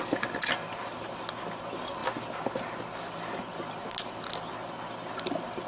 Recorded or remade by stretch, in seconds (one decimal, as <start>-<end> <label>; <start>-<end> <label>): 0.0-5.7 recorded